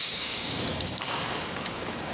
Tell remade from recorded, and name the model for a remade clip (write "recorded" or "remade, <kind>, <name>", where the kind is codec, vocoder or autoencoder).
remade, codec, DAC